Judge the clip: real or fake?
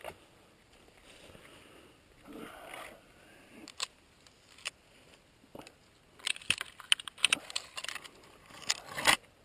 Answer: real